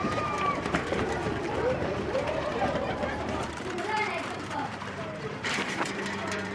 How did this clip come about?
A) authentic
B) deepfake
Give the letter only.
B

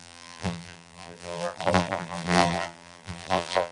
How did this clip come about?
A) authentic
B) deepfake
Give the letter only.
B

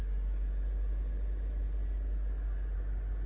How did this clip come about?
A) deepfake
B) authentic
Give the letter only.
B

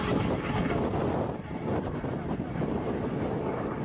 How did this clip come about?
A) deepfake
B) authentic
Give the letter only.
B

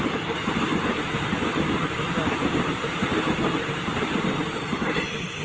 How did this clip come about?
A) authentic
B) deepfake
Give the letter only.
A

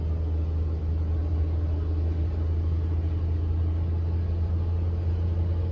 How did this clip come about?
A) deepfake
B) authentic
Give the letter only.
B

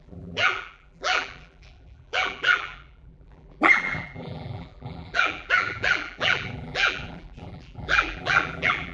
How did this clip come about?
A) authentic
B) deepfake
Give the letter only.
B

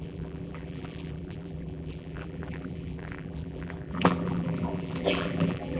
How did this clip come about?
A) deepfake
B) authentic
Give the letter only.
A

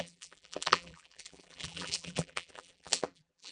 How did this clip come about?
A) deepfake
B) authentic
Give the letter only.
A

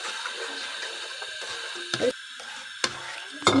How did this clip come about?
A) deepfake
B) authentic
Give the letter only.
B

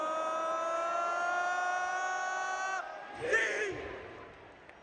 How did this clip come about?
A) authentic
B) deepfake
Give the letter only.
A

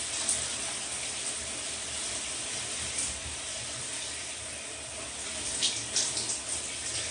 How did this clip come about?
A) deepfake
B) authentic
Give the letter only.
B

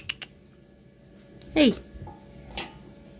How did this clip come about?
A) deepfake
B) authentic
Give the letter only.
B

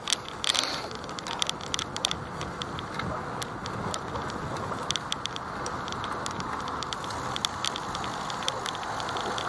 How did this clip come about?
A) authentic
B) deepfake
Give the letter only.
A